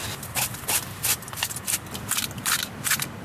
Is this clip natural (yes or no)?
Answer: yes